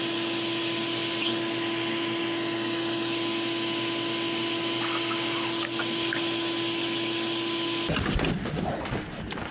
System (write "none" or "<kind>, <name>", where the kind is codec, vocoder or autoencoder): none